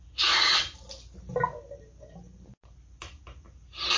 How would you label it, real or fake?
real